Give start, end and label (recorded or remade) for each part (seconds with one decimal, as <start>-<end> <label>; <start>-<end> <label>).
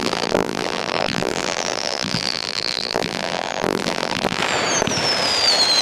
0.0-4.4 remade; 4.4-5.8 recorded